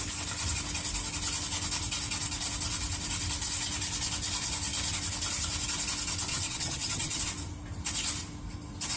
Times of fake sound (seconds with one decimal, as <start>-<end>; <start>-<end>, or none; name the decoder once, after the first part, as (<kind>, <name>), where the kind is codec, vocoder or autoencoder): 6.3-7.2 (vocoder, HiFi-GAN)